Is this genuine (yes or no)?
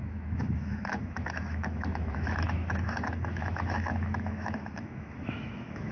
no